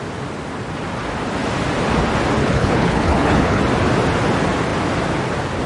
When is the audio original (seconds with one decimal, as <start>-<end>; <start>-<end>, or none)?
0.0-2.4; 3.6-5.7